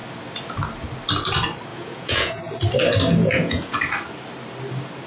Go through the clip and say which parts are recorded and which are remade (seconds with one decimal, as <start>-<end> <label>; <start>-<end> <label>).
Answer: 0.0-1.7 recorded; 1.7-2.4 remade; 2.4-3.2 recorded; 3.2-3.8 remade; 3.8-5.1 recorded